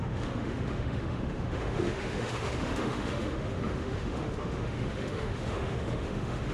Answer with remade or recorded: remade